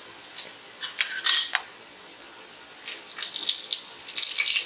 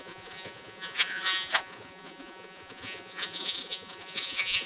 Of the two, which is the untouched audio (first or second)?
first